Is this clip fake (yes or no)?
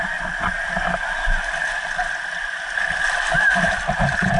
yes